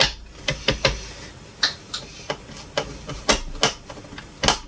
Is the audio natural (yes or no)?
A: yes